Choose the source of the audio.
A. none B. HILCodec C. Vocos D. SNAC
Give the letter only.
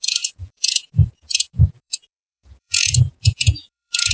C